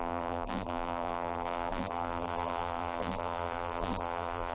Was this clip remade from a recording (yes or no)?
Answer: yes